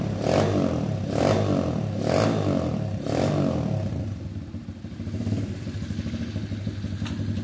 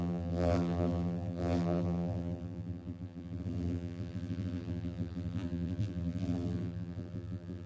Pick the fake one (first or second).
second